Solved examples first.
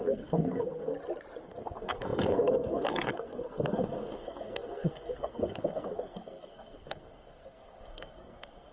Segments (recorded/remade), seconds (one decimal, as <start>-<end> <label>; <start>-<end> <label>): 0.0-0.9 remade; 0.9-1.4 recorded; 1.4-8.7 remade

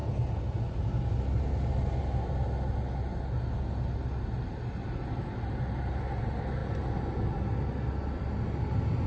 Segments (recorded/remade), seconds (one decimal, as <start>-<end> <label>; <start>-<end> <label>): 0.0-9.1 recorded

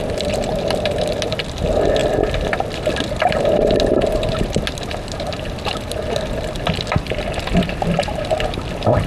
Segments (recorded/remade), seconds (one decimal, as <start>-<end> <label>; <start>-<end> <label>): 0.0-9.1 recorded